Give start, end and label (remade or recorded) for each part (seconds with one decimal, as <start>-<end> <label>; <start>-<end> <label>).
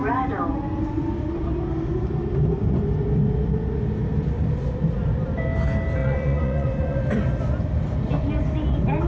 0.0-6.0 recorded; 6.0-7.0 remade; 7.0-9.1 recorded